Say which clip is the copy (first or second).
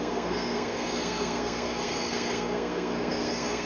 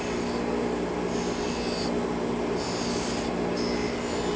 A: first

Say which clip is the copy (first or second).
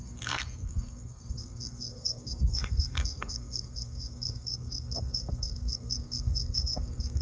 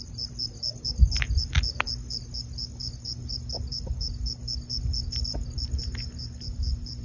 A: first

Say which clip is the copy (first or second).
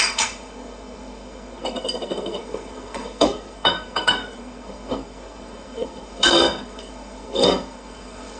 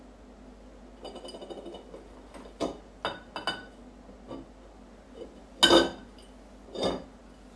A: first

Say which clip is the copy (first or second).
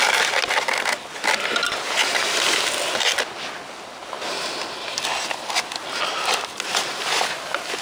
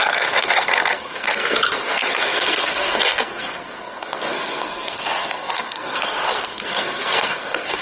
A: second